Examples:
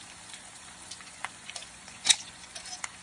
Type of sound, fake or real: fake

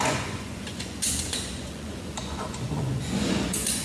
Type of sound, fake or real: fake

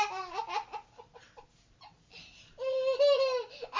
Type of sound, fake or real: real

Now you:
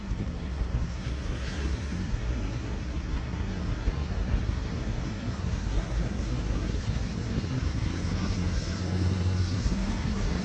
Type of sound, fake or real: fake